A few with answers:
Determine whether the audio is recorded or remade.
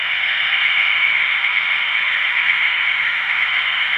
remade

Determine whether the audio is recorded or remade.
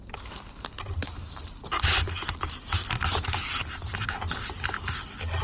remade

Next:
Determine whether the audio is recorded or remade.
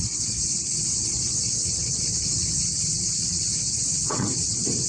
remade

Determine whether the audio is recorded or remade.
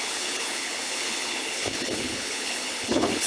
remade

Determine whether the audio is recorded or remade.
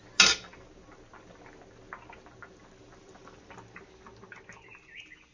recorded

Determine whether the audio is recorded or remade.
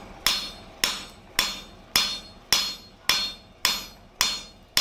recorded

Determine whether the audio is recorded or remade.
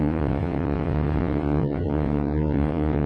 remade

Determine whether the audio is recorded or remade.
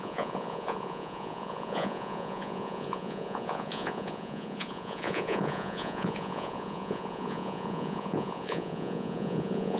remade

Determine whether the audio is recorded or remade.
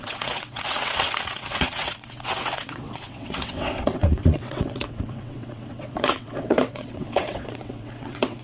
remade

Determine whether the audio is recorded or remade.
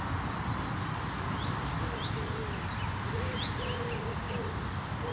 recorded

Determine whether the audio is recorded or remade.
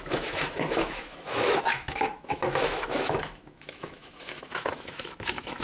remade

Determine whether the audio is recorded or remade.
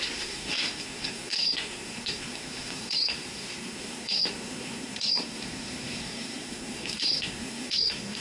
remade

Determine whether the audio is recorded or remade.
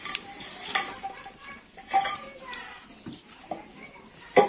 remade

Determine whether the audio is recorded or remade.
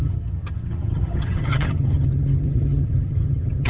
remade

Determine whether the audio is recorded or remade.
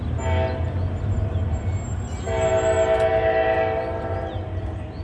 recorded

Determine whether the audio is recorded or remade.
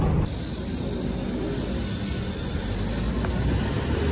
recorded